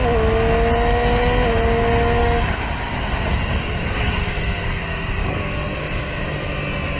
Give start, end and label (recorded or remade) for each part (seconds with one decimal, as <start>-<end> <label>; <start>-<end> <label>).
0.0-2.2 recorded; 2.2-6.1 remade; 6.1-7.0 recorded